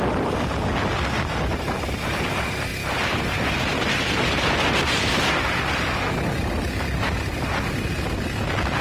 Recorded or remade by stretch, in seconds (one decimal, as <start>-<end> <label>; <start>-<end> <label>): 0.0-8.8 recorded